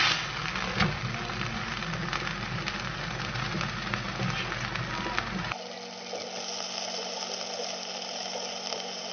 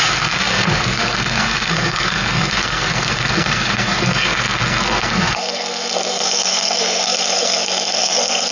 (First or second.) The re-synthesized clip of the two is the second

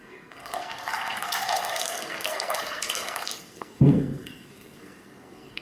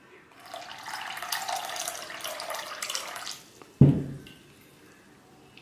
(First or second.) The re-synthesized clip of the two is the first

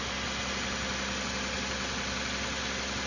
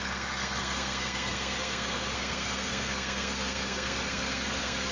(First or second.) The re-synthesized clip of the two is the second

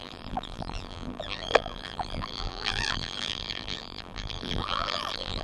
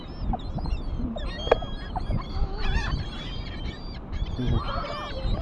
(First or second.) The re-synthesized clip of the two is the first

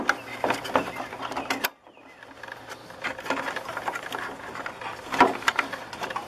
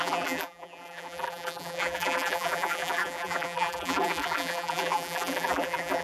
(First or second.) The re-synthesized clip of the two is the second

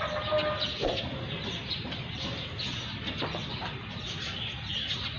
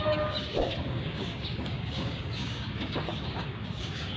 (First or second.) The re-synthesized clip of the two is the second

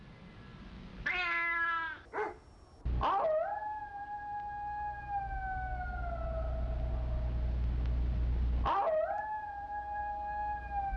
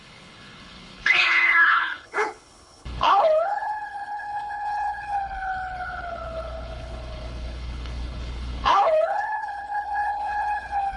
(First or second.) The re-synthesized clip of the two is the second